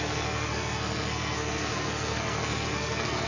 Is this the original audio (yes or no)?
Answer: no